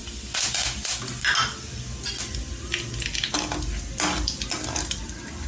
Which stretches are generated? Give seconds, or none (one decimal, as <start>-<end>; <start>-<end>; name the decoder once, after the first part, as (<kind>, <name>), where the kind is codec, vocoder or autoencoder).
none